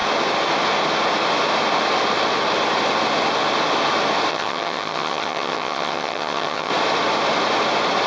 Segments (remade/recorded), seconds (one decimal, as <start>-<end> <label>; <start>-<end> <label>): 0.0-4.3 recorded; 4.3-6.7 remade; 6.7-8.1 recorded

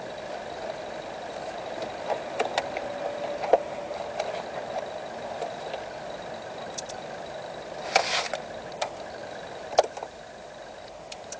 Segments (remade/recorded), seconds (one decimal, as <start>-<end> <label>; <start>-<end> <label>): 0.0-11.4 recorded

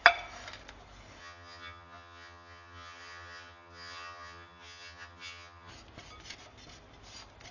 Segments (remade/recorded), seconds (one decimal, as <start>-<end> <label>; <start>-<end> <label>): 0.0-1.2 recorded; 1.2-5.7 remade; 5.7-7.5 recorded

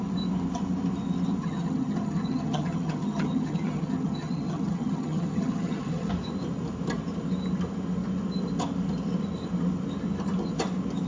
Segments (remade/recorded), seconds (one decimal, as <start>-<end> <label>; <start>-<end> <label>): 0.0-1.4 recorded; 1.4-6.1 remade; 6.1-11.1 recorded

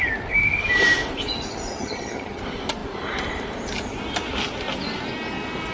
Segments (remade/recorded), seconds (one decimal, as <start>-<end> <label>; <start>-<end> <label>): 0.0-1.7 recorded; 1.7-2.4 remade; 2.4-5.7 recorded

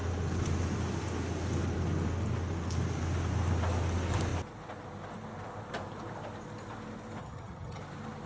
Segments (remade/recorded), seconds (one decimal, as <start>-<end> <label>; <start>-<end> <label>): 0.0-7.2 recorded; 7.2-7.8 remade; 7.8-8.3 recorded

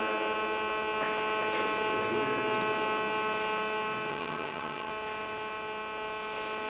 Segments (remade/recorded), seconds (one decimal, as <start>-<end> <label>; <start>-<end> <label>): 0.0-4.1 recorded; 4.1-4.9 remade; 4.9-6.7 recorded

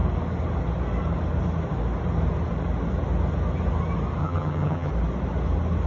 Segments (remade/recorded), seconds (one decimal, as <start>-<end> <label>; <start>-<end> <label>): 0.0-4.2 recorded; 4.2-4.9 remade; 4.9-5.9 recorded